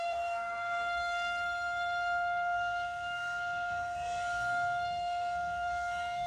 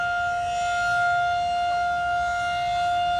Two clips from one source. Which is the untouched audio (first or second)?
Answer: second